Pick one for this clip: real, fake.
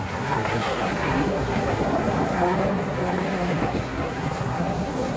fake